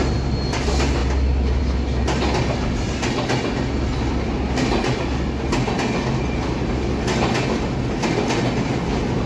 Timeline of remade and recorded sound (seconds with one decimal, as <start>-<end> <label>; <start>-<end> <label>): 0.0-9.3 recorded